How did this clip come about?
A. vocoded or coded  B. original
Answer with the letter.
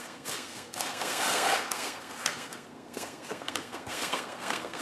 A